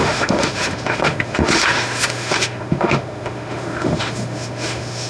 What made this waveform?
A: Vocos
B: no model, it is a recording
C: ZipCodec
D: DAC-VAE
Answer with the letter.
D